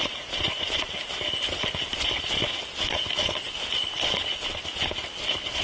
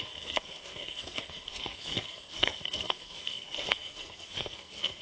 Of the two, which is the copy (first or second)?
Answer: second